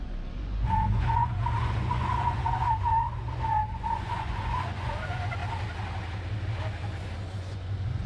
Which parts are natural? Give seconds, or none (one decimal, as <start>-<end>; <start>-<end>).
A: 5.4-7.3